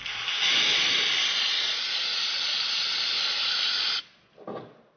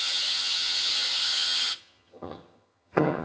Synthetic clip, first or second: second